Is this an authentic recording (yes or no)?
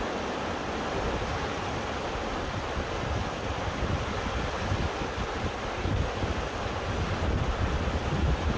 yes